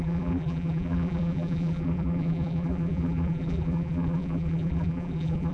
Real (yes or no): no